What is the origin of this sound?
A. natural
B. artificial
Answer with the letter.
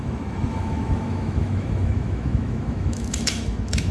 B